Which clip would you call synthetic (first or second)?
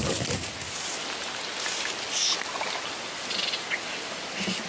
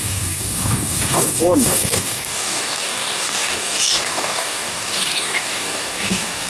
second